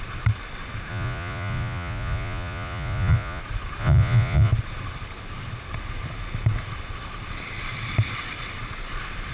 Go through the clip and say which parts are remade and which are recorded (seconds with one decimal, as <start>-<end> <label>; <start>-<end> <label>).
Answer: 0.0-0.9 recorded; 0.9-3.4 remade; 3.4-3.8 recorded; 3.8-4.5 remade; 4.5-9.3 recorded